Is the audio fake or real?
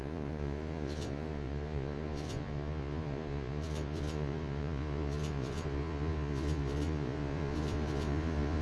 fake